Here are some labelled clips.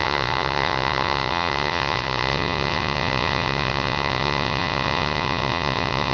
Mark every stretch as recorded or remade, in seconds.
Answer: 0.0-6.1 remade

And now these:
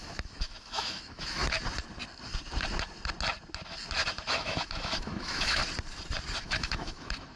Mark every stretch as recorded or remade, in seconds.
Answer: 0.0-1.4 remade; 1.4-4.3 recorded; 4.3-5.6 remade; 5.6-6.4 recorded; 6.4-7.4 remade

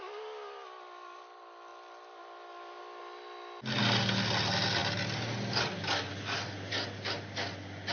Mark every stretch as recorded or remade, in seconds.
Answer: 0.0-7.9 recorded

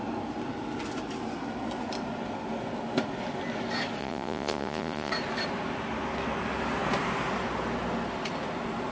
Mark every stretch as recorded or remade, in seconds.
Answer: 0.0-4.0 recorded; 4.0-5.1 remade; 5.1-8.9 recorded